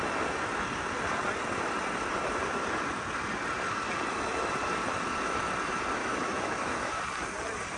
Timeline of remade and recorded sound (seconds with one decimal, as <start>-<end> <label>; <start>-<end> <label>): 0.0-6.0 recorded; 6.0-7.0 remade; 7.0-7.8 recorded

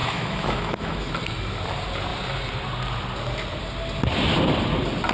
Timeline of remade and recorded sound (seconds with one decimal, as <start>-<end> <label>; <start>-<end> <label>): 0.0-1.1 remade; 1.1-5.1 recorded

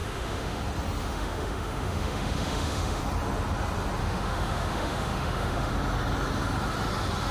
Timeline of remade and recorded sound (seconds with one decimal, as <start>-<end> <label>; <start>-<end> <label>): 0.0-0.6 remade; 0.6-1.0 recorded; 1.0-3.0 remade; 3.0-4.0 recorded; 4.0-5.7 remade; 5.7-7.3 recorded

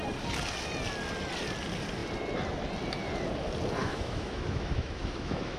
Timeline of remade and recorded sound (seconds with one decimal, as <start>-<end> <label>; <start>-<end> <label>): 0.0-3.8 recorded; 3.8-5.6 remade

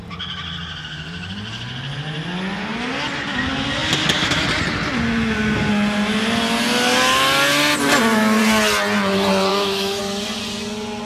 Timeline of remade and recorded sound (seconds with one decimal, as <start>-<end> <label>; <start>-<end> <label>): 0.0-9.5 recorded; 9.5-10.0 remade; 10.0-11.1 recorded

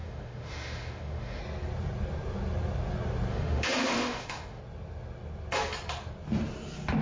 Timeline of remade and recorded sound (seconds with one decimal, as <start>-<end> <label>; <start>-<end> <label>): 0.0-1.4 remade; 1.4-3.3 recorded; 3.3-4.6 remade; 4.6-7.0 recorded

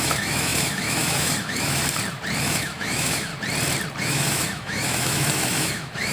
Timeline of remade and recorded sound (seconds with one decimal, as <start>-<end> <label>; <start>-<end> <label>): 0.0-1.8 remade; 1.8-2.4 recorded; 2.4-3.3 remade; 3.3-4.0 recorded; 4.0-6.1 remade

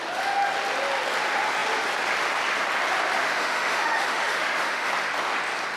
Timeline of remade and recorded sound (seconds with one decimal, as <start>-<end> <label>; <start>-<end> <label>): 0.0-3.2 recorded; 3.2-4.9 remade; 4.9-5.8 recorded